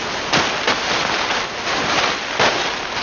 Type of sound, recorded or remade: recorded